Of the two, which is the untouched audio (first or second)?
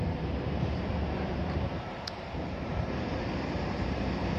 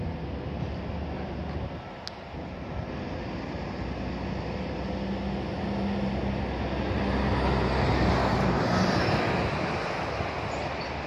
second